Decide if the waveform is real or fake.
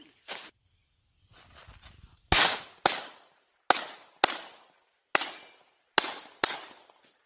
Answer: real